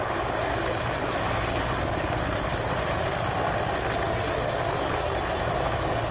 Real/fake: real